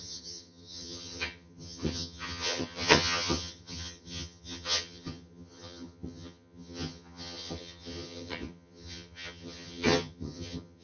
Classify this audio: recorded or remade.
remade